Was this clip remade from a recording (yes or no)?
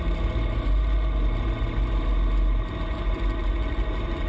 no